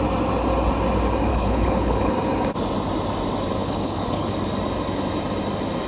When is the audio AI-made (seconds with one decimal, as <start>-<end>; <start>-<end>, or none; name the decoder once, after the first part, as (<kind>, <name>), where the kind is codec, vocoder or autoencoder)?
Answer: 1.3-2.1 (codec, HILCodec); 3.6-4.3